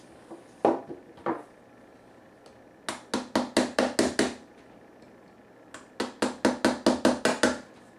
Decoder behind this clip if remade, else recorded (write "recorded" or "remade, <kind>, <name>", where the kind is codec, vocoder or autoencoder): recorded